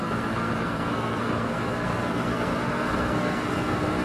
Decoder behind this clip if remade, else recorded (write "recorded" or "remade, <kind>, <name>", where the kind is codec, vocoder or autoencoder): remade, codec, SNAC